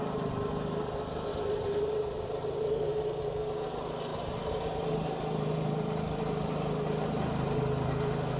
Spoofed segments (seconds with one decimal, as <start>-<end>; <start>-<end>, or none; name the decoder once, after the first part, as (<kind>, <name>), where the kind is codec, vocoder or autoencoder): 1.3-2.9 (vocoder, BigVGAN v2); 4.1-7.6